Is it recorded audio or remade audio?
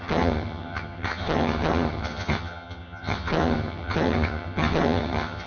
remade